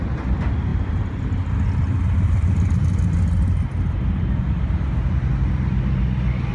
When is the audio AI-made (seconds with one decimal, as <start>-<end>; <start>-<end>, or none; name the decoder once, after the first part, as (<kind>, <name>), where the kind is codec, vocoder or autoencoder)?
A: none